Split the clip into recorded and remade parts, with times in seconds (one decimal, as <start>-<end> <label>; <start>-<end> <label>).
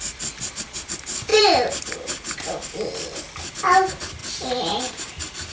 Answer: 0.0-1.3 recorded; 1.3-1.9 remade; 1.9-4.2 recorded; 4.2-4.8 remade; 4.8-5.5 recorded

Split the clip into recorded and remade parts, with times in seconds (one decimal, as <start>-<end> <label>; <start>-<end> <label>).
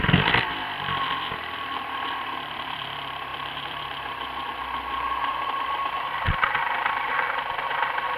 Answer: 0.0-8.2 remade